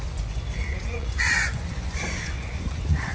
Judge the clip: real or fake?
fake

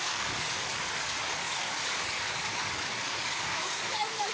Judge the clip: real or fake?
fake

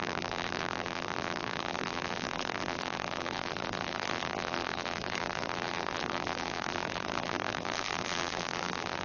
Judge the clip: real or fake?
fake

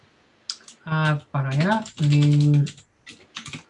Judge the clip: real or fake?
real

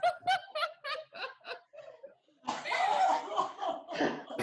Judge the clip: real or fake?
real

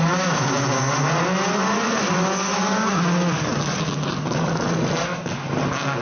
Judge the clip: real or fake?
real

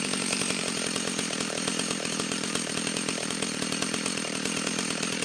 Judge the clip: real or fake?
fake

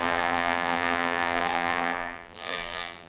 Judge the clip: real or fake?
fake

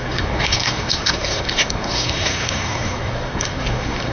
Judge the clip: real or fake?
fake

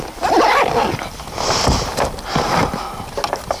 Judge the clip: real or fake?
real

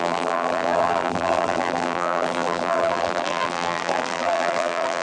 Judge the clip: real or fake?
fake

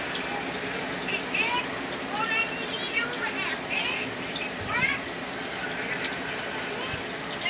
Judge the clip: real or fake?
real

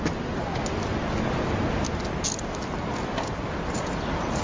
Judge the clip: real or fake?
real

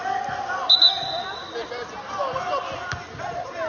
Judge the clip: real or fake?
real